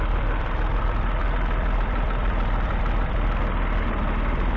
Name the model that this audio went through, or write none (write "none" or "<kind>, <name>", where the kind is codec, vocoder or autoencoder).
vocoder, BigVGAN v2